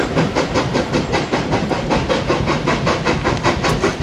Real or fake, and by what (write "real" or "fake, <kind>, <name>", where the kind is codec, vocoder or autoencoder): real